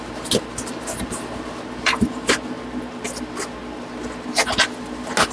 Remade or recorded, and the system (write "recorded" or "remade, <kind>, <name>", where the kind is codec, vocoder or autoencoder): recorded